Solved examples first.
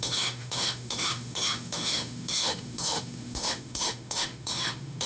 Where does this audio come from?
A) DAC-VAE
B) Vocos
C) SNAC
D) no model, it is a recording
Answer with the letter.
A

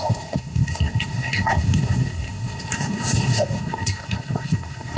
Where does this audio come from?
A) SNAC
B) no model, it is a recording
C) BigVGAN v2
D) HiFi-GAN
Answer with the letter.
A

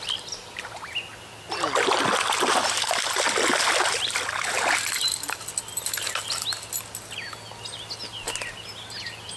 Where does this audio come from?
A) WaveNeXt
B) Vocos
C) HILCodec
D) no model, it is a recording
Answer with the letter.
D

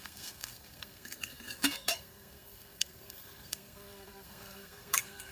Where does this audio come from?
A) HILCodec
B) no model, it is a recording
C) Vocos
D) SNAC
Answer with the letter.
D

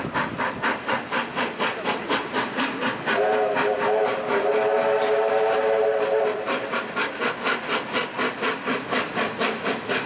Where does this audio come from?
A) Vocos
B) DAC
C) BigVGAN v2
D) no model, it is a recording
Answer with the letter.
D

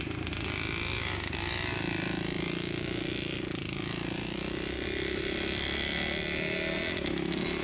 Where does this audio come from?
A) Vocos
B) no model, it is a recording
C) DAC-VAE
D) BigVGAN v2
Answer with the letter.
B